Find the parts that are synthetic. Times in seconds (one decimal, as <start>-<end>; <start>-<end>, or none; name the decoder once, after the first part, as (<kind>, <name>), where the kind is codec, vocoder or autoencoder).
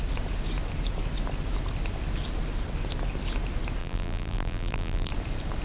3.8-5.1 (vocoder, BigVGAN v2)